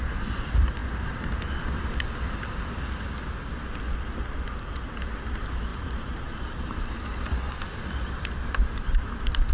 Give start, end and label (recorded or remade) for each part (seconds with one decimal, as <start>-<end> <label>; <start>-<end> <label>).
0.0-5.7 recorded; 5.7-7.5 remade; 7.5-9.5 recorded